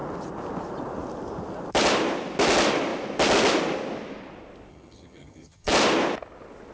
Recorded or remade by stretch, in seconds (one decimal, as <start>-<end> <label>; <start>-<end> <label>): 0.0-4.7 recorded; 4.7-5.7 remade; 5.7-6.7 recorded